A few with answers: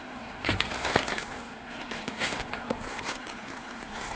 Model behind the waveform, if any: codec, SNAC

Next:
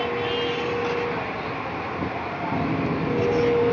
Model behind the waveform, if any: none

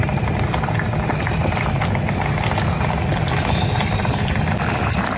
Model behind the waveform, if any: none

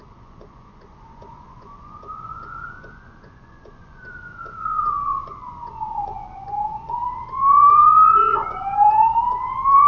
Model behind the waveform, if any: vocoder, Vocos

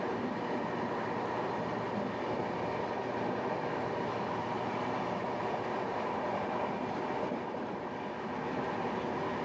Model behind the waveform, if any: none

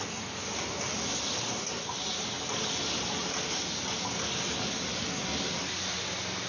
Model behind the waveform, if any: none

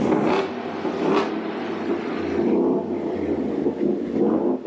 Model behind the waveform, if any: none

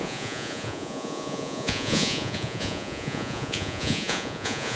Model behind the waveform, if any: vocoder, Vocos